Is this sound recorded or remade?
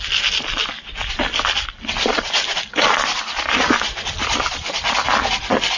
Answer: recorded